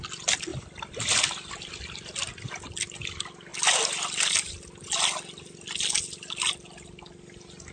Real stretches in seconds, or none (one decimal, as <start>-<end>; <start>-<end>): 0.0-0.5; 1.5-7.7